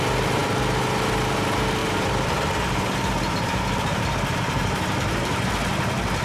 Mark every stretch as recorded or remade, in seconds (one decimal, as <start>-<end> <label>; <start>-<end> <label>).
0.0-1.8 recorded; 1.8-5.5 remade; 5.5-6.2 recorded